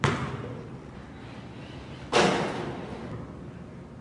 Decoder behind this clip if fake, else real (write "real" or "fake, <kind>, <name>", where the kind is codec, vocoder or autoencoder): real